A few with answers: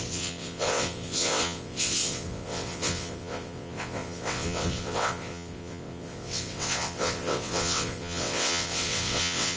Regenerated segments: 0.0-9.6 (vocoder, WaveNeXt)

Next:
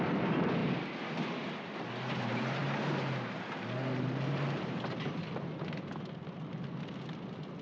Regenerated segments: none

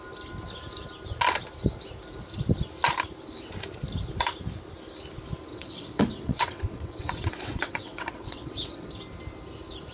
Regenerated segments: 5.5-8.9 (vocoder, WaveNeXt)